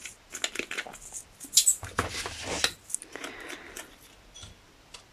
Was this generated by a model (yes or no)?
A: no